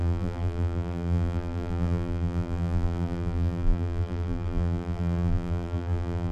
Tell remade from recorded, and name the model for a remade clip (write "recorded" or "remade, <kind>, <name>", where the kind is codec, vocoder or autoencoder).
remade, vocoder, BigVGAN v2